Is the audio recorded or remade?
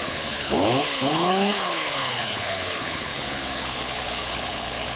remade